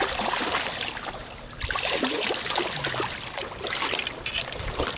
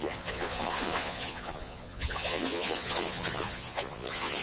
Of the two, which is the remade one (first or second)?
second